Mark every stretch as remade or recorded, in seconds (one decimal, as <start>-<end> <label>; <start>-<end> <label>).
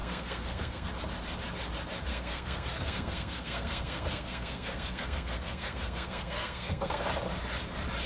0.0-0.9 remade; 0.9-2.1 recorded; 2.1-7.0 remade; 7.0-8.1 recorded